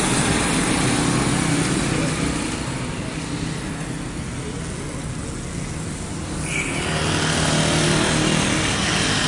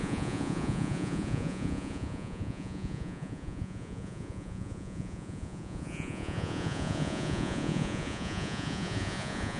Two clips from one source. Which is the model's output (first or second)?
second